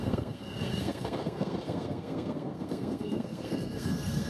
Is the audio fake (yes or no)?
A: yes